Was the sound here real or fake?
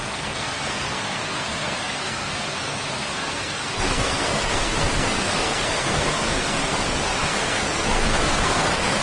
fake